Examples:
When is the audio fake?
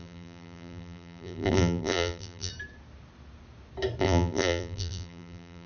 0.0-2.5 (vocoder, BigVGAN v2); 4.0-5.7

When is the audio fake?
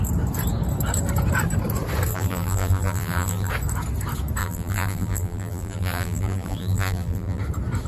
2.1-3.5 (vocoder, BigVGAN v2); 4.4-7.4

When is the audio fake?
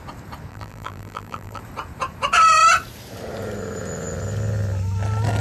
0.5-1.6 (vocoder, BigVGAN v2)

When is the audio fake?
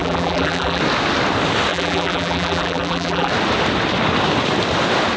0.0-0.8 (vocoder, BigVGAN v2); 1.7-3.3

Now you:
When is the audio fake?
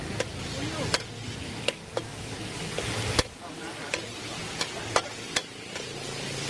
none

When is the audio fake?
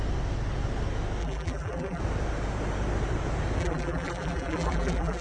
1.2-2.0 (vocoder, BigVGAN v2); 3.6-5.2